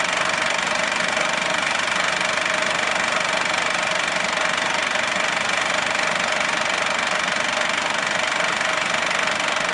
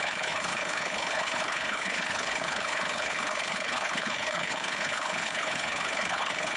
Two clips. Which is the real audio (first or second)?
first